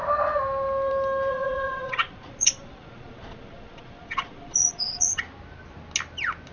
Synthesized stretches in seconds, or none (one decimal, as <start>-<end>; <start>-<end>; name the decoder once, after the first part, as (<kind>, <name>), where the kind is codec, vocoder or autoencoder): 1.3-5.2 (vocoder, Vocos)